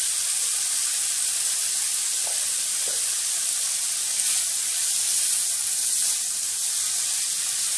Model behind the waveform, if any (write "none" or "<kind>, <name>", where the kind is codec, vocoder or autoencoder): none